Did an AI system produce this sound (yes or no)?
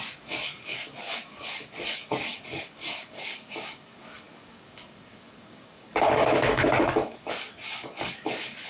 yes